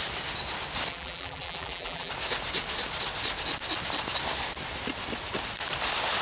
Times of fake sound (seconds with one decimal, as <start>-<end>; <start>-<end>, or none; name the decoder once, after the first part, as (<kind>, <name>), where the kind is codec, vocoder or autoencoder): 0.9-2.1 (vocoder, BigVGAN v2)